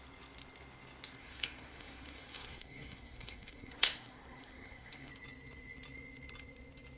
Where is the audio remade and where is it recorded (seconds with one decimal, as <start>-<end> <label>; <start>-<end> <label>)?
0.0-1.2 recorded; 1.2-5.1 remade; 5.1-7.0 recorded